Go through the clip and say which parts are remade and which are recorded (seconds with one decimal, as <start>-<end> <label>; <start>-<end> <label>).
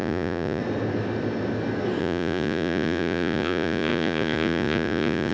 0.0-0.6 remade; 0.6-2.0 recorded; 2.0-5.3 remade